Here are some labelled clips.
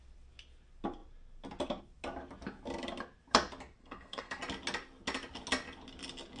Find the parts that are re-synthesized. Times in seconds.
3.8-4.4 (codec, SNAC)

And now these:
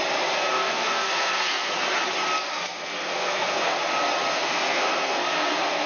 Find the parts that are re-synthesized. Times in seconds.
0.5-1.7 (codec, SNAC); 2.5-3.8; 4.3-5.9

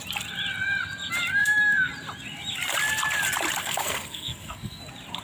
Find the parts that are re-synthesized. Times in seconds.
1.3-1.9 (codec, SNAC); 3.6-4.8

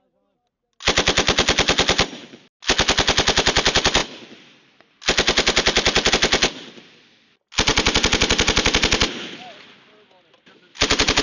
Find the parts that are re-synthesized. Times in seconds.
none

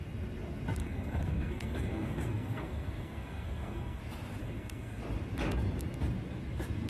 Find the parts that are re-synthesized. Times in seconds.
0.8-4.0 (codec, SNAC); 4.4-5.0